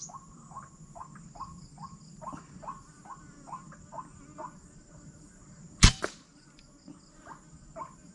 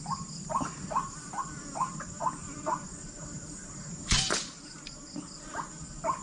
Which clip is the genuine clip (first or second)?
first